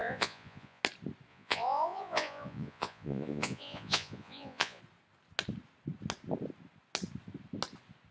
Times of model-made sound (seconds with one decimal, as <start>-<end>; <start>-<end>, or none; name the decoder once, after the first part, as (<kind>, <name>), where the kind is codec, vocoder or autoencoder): 0.0-0.8 (vocoder, Vocos); 1.3-4.8